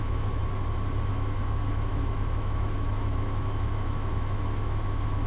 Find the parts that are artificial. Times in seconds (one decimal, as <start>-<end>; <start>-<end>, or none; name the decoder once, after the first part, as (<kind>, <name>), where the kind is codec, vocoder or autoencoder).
0.0-0.4 (autoencoder, DAC-VAE); 1.1-5.3